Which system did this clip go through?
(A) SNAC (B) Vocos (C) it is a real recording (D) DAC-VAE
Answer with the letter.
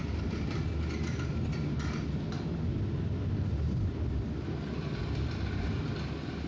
C